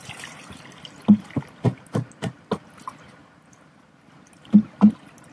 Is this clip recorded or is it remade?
recorded